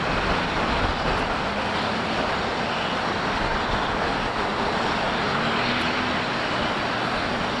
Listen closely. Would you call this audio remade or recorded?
recorded